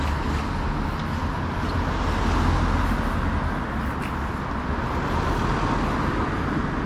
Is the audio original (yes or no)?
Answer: yes